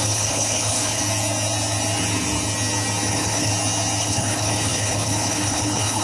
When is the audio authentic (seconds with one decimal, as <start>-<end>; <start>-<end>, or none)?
1.0-3.1; 3.5-4.0